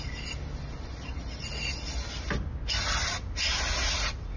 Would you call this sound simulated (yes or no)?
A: no